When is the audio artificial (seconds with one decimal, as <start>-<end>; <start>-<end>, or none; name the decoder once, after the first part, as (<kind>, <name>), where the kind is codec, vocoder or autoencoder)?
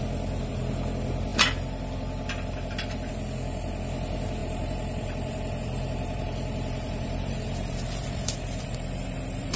4.4-9.6 (vocoder, BigVGAN v2)